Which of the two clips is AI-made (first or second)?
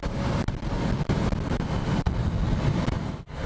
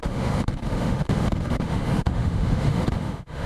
second